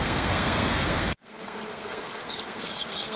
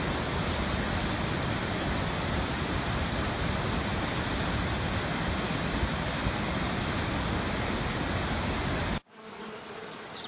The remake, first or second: first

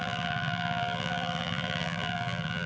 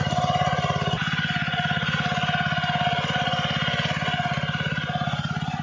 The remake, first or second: first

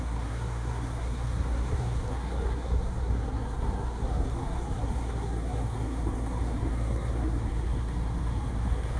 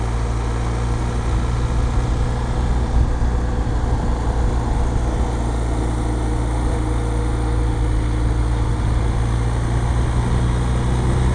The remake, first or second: first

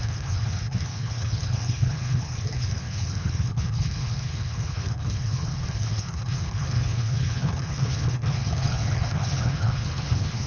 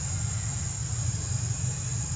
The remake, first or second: first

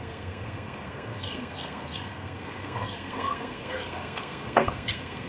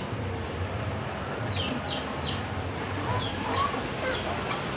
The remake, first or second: first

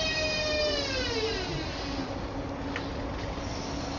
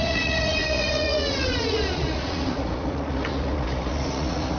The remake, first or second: second